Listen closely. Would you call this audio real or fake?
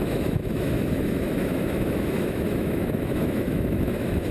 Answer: fake